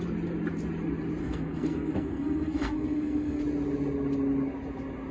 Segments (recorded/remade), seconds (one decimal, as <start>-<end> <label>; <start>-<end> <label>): 0.0-1.2 recorded; 1.2-3.4 remade; 3.4-5.1 recorded